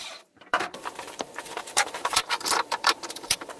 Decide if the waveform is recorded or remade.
remade